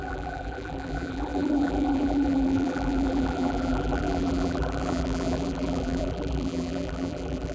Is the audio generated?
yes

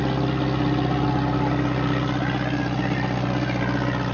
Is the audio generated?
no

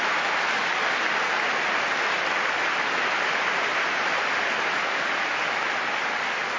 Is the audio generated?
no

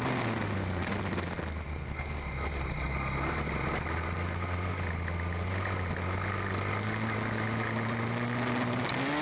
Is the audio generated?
no